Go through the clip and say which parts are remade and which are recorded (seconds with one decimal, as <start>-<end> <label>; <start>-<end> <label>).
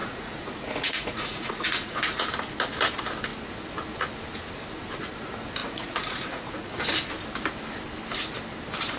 0.0-2.2 remade; 2.2-5.6 recorded; 5.6-6.7 remade; 6.7-9.0 recorded